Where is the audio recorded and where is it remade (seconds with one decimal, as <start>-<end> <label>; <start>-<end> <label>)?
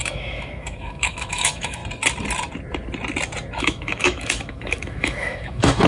0.0-1.8 remade; 1.8-3.6 recorded; 3.6-5.9 remade